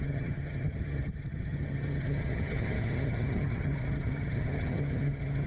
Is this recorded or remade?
remade